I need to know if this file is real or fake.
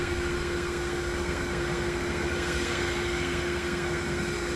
fake